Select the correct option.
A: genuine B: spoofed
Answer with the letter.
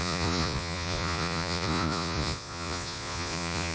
B